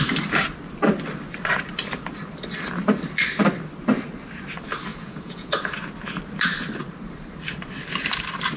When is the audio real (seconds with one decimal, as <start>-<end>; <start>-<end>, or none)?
0.0-4.9; 5.5-8.6

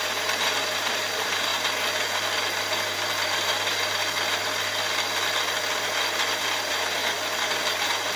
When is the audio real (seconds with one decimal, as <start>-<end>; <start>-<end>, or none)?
1.5-6.4; 7.0-7.5

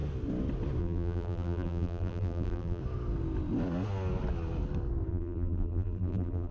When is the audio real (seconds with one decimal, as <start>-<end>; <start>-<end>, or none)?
0.0-0.8; 2.8-5.1

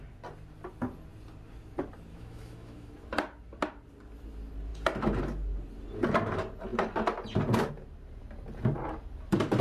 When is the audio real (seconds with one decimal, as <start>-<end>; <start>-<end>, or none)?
0.0-2.1; 2.9-9.6

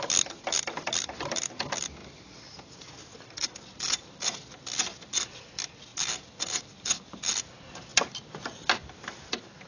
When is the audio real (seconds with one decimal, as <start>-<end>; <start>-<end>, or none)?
0.0-9.7